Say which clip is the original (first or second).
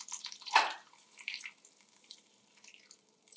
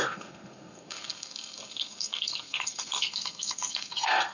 first